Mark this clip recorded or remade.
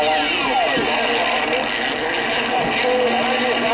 recorded